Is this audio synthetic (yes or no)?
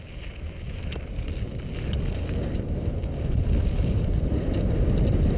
no